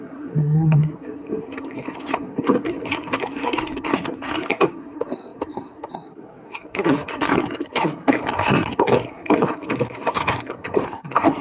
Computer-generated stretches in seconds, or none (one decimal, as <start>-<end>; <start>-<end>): 0.0-11.4